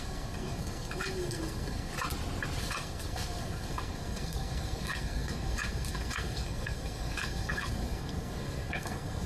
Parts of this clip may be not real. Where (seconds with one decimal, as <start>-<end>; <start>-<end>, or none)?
0.0-1.9; 2.6-9.3